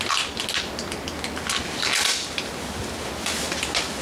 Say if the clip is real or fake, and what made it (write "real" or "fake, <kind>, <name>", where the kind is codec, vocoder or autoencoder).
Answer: real